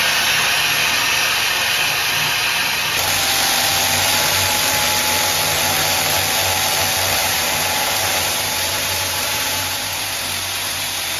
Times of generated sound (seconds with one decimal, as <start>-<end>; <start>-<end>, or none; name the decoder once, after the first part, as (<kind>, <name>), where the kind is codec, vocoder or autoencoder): 7.2-11.2 (vocoder, BigVGAN v2)